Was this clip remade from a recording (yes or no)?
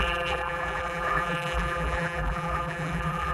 yes